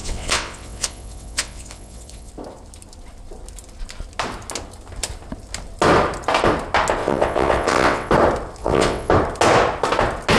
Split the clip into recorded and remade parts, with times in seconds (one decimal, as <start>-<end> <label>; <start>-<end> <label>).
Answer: 0.0-2.3 remade; 2.3-7.0 recorded; 7.0-8.1 remade; 8.1-8.6 recorded; 8.6-9.1 remade; 9.1-10.4 recorded